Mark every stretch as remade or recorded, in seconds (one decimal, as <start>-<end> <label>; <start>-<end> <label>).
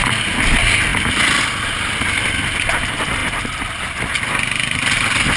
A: 0.0-5.4 recorded